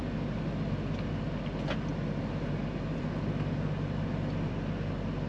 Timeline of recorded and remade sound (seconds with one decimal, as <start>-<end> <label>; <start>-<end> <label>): 0.0-5.3 recorded